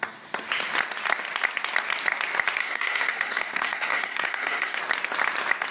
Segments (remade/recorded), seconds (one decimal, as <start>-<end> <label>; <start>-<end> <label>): 0.0-2.6 recorded; 2.6-4.8 remade; 4.8-5.7 recorded